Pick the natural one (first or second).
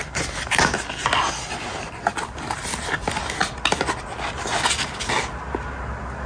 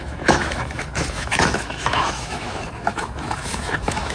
first